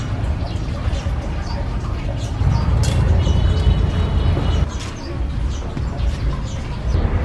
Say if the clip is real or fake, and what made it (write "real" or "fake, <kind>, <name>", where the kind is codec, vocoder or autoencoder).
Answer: real